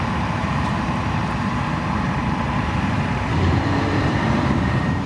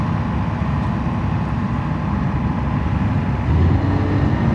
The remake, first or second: first